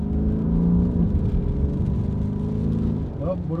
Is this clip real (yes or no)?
yes